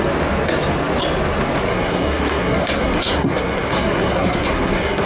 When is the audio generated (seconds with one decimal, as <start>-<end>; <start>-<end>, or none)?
1.7-5.1